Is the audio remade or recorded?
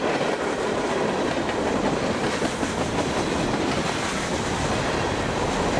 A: remade